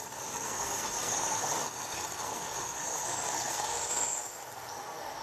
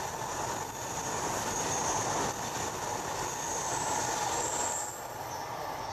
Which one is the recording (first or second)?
second